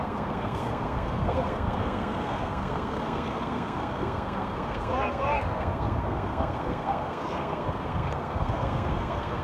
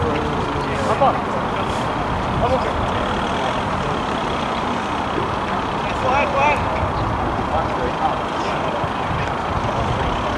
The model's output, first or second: first